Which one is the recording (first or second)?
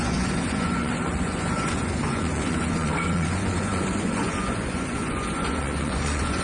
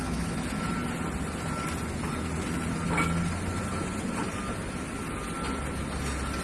second